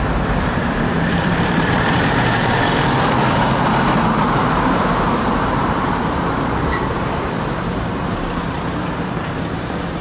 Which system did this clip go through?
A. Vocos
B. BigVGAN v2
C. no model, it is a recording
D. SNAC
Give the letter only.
B